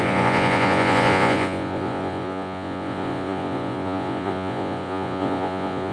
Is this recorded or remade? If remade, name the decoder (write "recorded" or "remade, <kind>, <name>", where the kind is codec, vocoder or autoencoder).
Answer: remade, vocoder, Vocos